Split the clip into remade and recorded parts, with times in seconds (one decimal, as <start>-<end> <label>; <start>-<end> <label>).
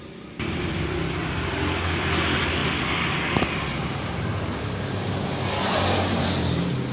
0.0-3.7 recorded; 3.7-6.2 remade; 6.2-6.9 recorded